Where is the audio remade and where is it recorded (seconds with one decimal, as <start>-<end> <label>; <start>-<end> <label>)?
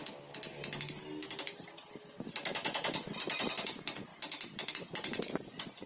0.0-3.5 recorded; 3.5-4.1 remade; 4.1-4.7 recorded; 4.7-5.9 remade